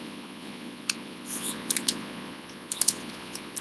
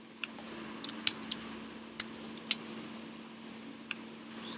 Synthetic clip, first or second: first